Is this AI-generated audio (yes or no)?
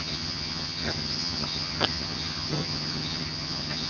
yes